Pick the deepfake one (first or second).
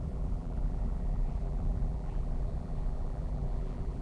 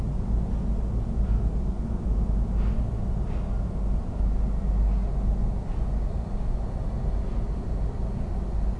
first